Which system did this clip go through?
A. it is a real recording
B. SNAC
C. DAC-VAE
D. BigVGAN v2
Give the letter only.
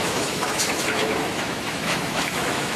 C